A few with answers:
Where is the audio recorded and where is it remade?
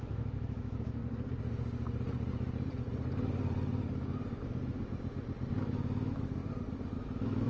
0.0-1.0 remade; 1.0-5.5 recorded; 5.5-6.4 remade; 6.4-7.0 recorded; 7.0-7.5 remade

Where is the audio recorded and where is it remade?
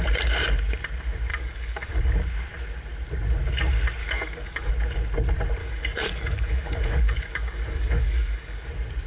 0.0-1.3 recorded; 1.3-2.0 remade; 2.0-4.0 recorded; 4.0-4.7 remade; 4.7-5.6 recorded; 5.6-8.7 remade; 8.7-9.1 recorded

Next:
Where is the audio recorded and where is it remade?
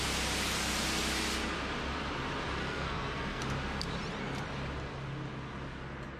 0.0-2.6 recorded; 2.6-3.4 remade; 3.4-6.2 recorded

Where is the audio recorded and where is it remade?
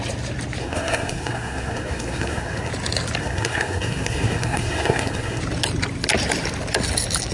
0.0-0.6 recorded; 0.6-2.7 remade; 2.7-3.2 recorded; 3.2-5.4 remade; 5.4-7.3 recorded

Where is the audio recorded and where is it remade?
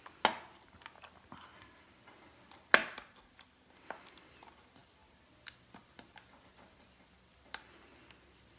0.0-8.6 recorded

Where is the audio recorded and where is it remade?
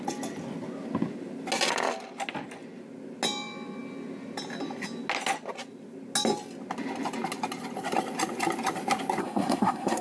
0.0-9.2 recorded; 9.2-10.0 remade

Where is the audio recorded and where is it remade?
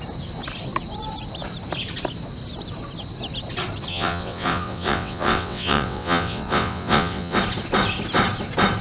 0.0-3.9 recorded; 3.9-7.4 remade; 7.4-8.8 recorded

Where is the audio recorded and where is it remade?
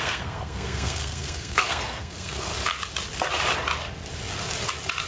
0.0-2.5 remade; 2.5-5.1 recorded